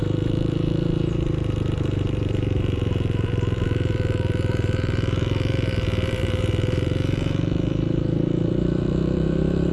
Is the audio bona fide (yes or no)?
no